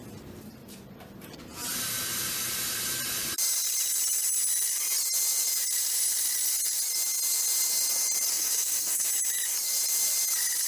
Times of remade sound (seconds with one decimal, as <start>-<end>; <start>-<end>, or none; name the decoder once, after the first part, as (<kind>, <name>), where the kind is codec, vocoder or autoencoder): 8.3-9.1 (codec, DAC)